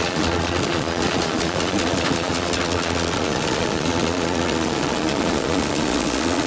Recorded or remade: remade